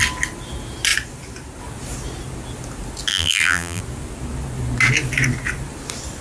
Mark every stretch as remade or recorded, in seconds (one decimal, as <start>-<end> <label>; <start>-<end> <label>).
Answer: 0.0-3.1 recorded; 3.1-3.8 remade; 3.8-6.2 recorded